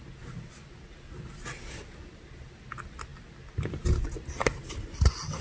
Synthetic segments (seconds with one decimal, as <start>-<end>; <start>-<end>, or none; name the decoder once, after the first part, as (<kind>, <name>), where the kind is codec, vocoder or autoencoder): none